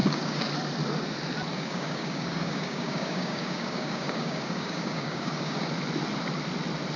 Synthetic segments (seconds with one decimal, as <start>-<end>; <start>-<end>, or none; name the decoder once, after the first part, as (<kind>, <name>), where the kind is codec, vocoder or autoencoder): 0.0-0.5 (codec, DAC); 1.5-5.7